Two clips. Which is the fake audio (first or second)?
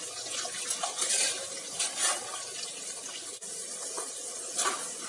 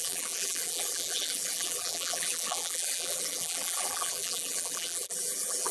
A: second